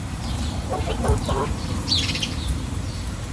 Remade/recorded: remade